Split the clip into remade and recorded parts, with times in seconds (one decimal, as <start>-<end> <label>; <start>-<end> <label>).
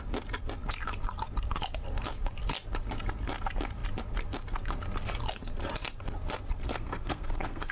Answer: 0.0-6.7 recorded; 6.7-7.7 remade